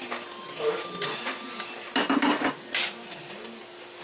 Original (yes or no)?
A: yes